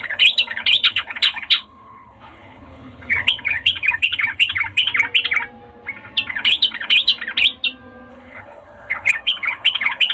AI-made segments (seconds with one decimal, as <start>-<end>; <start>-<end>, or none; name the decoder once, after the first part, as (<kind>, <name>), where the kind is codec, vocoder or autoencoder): 0.0-4.9 (codec, HILCodec); 6.3-7.1; 8.1-10.1